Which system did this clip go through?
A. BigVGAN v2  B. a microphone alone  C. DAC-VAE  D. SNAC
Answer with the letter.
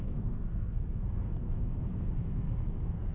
D